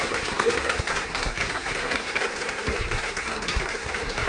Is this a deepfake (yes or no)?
yes